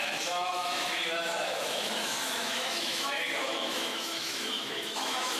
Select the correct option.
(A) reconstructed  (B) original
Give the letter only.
A